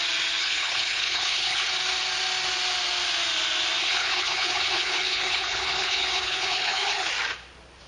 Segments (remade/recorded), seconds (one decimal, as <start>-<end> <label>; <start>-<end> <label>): 0.0-0.4 recorded; 0.4-1.7 remade; 1.7-3.8 recorded; 3.8-7.1 remade; 7.1-7.9 recorded